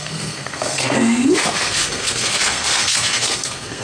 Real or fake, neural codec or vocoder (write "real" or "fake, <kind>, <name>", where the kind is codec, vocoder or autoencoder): fake, codec, SNAC